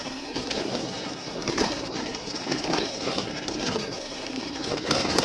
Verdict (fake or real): fake